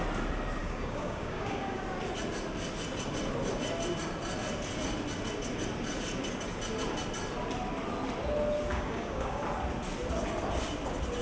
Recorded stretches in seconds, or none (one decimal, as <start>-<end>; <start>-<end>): 0.0-0.6; 1.8-8.7; 9.4-11.2